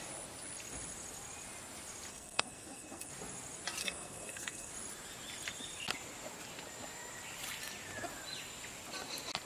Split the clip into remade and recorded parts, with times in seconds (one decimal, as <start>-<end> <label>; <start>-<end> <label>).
0.0-2.1 recorded; 2.1-3.1 remade; 3.1-3.8 recorded; 3.8-4.7 remade; 4.7-9.5 recorded